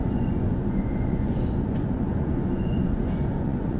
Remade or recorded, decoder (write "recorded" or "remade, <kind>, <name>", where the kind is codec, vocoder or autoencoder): remade, vocoder, Vocos